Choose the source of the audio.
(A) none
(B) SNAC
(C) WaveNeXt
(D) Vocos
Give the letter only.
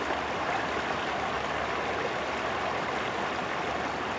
A